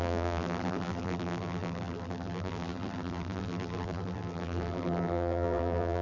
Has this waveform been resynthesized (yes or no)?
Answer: yes